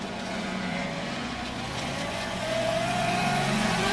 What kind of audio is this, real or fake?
fake